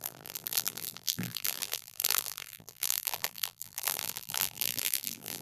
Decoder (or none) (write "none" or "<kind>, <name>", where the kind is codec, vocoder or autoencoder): vocoder, BigVGAN v2